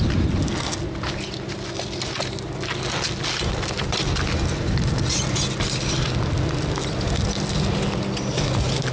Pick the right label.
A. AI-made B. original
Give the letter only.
B